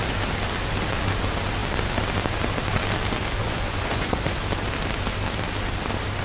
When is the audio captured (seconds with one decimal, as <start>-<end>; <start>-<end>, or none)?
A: 0.0-3.4; 4.4-6.2